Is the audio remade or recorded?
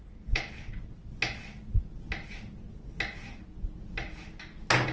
recorded